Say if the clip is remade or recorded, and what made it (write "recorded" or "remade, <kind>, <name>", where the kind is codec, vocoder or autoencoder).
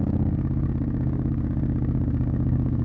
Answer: remade, codec, DAC